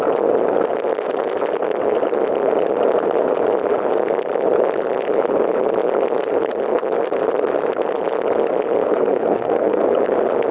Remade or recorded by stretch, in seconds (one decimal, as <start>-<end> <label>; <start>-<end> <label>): 0.0-8.8 recorded; 8.8-9.8 remade; 9.8-10.5 recorded